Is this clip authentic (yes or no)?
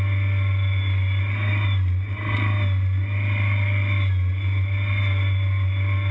yes